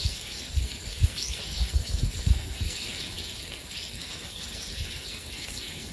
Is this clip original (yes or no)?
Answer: no